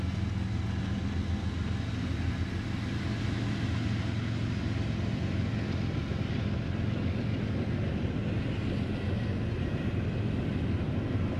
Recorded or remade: recorded